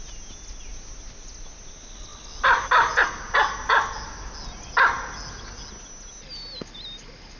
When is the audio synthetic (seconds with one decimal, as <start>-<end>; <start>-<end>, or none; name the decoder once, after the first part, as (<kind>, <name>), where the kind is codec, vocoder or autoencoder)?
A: none